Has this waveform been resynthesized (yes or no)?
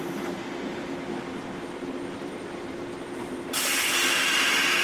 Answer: no